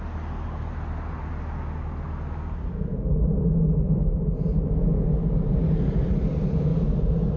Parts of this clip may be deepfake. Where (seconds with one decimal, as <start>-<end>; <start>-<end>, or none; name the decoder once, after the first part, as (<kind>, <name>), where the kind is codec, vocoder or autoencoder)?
none